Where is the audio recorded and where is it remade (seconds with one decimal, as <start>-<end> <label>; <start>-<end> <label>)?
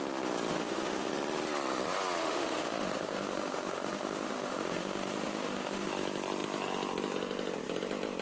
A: 0.0-0.5 recorded; 0.5-1.1 remade; 1.1-2.2 recorded; 2.2-5.9 remade; 5.9-8.2 recorded